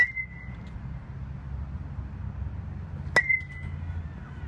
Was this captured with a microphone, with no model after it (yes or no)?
yes